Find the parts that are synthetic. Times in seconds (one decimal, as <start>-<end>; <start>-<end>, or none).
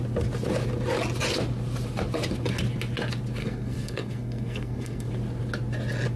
3.4-5.1